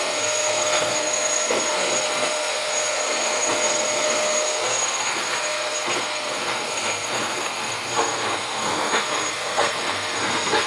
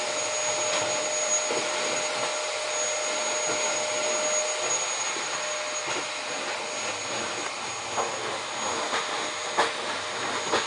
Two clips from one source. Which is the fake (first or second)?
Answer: first